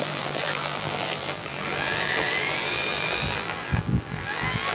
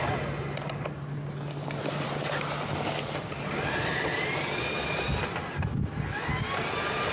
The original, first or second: second